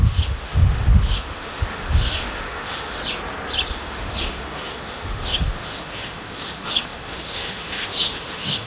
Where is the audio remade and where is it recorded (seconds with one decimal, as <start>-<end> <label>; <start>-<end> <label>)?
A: 0.0-3.0 remade; 3.0-3.7 recorded; 3.7-8.7 remade